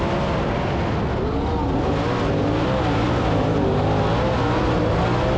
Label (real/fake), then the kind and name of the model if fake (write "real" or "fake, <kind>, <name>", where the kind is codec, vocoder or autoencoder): real